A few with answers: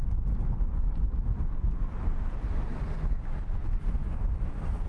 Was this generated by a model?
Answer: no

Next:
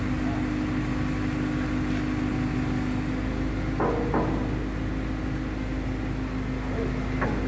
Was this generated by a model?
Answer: no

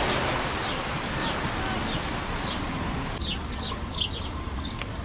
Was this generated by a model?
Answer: no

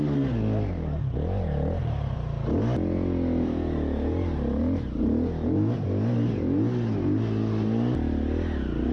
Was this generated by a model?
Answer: no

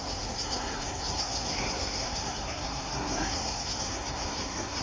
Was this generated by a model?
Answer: yes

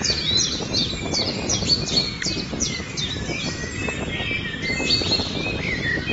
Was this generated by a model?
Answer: no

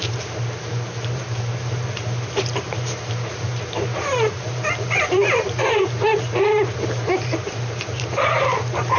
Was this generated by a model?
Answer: yes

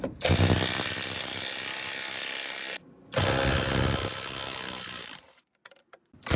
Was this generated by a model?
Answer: no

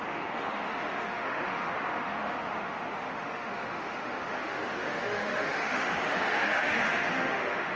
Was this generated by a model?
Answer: yes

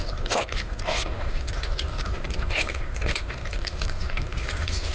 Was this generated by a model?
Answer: yes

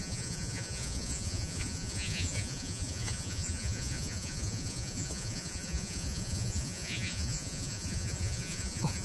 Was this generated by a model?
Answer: yes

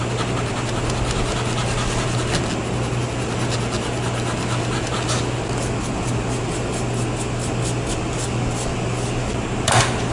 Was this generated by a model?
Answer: no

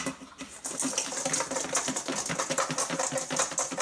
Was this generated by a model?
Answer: no